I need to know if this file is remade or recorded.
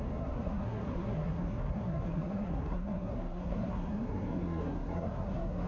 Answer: remade